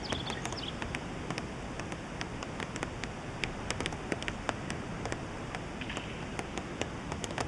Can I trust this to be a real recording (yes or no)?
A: yes